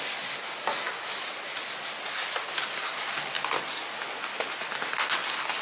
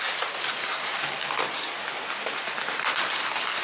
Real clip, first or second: first